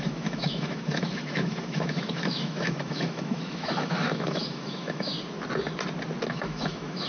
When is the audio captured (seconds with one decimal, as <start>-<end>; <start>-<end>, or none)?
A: 5.1-6.3